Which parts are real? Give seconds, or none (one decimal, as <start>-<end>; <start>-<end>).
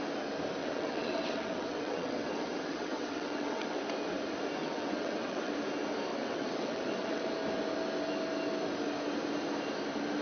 0.0-0.6; 3.8-4.6; 5.5-6.1; 7.3-10.2